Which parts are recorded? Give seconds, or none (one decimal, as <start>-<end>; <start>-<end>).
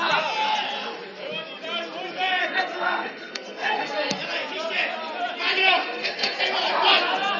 0.0-2.4; 4.2-5.6; 6.4-7.4